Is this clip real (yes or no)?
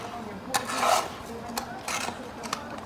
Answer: yes